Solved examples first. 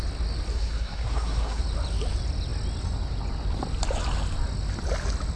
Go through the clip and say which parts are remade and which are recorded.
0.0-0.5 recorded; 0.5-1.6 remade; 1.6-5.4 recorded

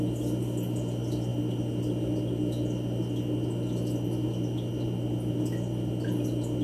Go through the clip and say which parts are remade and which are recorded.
0.0-6.6 recorded

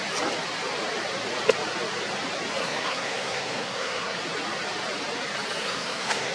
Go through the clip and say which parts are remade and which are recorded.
0.0-2.6 recorded; 2.6-4.2 remade; 4.2-5.6 recorded; 5.6-6.3 remade

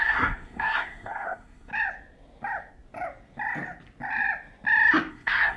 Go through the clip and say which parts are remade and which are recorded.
0.0-1.7 remade; 1.7-5.1 recorded; 5.1-5.6 remade